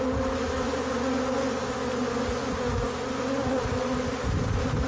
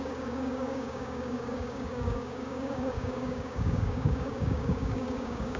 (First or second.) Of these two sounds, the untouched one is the first